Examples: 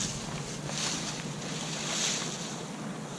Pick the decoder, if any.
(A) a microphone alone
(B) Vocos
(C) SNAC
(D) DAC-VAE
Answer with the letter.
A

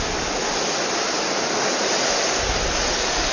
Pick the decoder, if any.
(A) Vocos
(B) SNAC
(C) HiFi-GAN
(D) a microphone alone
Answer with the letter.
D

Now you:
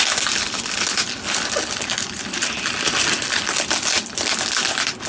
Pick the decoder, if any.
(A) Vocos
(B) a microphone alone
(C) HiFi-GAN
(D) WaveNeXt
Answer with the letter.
B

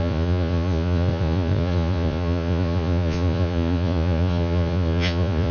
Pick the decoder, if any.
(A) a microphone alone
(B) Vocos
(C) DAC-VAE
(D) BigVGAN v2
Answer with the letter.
B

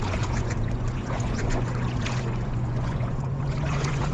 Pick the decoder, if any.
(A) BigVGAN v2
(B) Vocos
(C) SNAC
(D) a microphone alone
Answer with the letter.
B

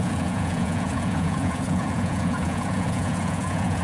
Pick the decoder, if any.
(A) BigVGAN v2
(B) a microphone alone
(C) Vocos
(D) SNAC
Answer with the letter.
C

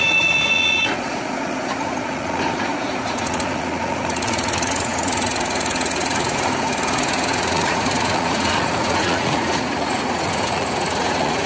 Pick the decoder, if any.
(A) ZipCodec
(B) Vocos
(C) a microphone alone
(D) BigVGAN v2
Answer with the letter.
B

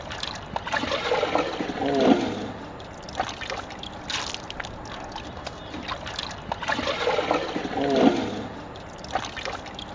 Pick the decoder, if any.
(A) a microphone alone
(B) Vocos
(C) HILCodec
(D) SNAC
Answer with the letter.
A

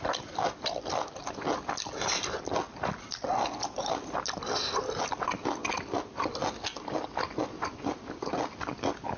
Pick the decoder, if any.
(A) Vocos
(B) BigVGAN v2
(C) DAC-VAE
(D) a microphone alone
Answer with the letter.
D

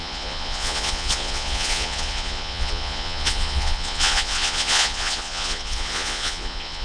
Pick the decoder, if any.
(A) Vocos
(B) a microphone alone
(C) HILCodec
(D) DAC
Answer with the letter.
A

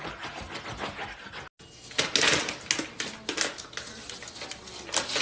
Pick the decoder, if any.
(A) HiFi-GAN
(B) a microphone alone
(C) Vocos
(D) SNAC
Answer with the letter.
B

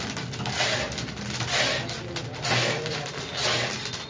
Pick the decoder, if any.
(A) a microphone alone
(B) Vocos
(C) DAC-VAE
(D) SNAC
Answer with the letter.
A